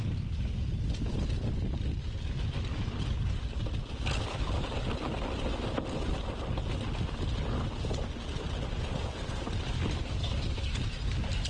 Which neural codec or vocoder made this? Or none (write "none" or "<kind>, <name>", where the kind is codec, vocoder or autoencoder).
none